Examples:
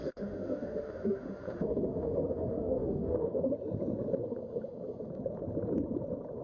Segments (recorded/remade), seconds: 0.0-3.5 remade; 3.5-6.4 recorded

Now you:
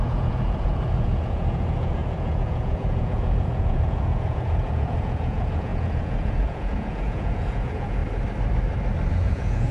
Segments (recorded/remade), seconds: 0.0-8.0 remade; 8.0-9.1 recorded; 9.1-9.7 remade